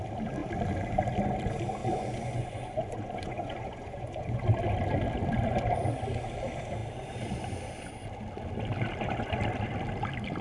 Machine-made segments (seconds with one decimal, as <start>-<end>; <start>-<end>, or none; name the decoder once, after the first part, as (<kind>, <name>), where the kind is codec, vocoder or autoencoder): 1.8-4.4 (vocoder, Vocos)